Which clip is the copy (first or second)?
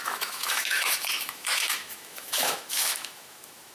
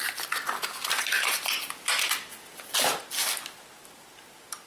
first